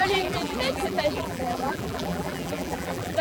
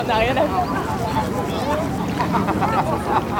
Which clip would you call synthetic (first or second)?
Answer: first